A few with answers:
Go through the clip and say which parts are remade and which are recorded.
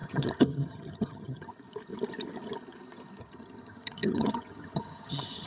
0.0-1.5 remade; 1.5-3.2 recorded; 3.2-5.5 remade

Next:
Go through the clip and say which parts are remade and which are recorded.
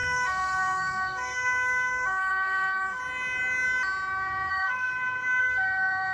0.0-3.0 remade; 3.0-4.5 recorded; 4.5-4.9 remade; 4.9-5.4 recorded; 5.4-6.1 remade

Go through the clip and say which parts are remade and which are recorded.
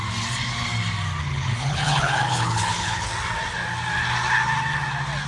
0.0-1.2 recorded; 1.2-3.1 remade; 3.1-5.3 recorded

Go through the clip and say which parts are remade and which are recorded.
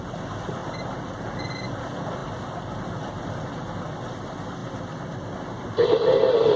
0.0-6.6 recorded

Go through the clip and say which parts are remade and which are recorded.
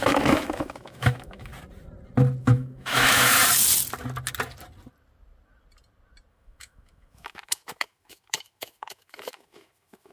0.0-1.5 remade; 1.5-2.4 recorded; 2.4-3.4 remade; 3.4-6.3 recorded; 6.3-10.1 remade